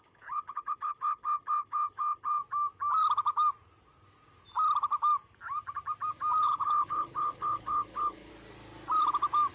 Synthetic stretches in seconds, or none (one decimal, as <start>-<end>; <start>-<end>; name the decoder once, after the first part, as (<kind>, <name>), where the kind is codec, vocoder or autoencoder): 0.0-2.4 (codec, HILCodec); 6.5-8.3